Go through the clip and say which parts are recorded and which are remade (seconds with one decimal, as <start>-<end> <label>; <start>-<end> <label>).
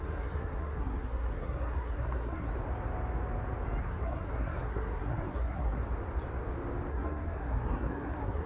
0.0-2.5 remade; 2.5-3.8 recorded; 3.8-5.8 remade; 5.8-6.9 recorded; 6.9-8.5 remade